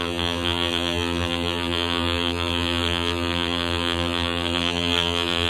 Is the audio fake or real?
fake